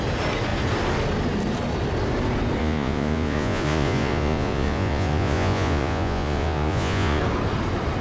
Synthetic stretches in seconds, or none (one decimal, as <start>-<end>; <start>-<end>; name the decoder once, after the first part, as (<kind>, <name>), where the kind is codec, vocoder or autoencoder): 2.6-7.2 (vocoder, Vocos)